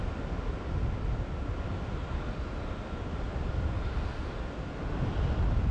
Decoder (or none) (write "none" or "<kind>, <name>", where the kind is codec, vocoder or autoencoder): none